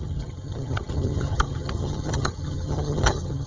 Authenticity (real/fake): fake